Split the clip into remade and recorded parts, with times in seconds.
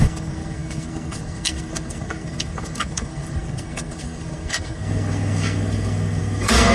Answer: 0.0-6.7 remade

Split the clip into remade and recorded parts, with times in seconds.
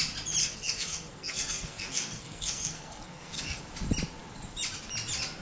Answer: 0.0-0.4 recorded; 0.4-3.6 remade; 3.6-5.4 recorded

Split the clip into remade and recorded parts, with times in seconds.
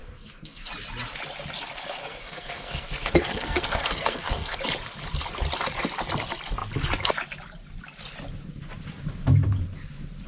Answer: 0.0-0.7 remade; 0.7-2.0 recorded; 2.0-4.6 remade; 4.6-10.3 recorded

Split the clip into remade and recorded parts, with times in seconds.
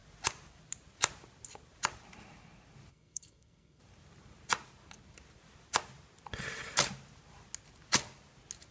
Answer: 0.0-2.9 recorded; 2.9-3.8 remade; 3.8-8.7 recorded